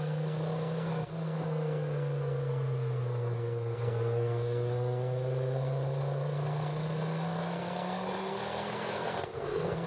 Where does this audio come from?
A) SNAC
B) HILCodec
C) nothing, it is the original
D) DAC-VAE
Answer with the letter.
A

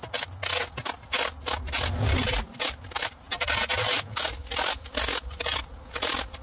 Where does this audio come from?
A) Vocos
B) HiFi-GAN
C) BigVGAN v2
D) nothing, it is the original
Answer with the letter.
D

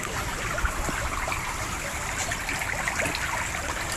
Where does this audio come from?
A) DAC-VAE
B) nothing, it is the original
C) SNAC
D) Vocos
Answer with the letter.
B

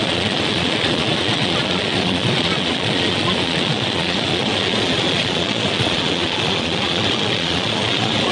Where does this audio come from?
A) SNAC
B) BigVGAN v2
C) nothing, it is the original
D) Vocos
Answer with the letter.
D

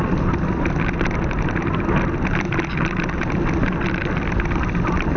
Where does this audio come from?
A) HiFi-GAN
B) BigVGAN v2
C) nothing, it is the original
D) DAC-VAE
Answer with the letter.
C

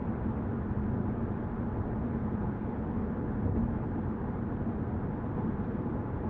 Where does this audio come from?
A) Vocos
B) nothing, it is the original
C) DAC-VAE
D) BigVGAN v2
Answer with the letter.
B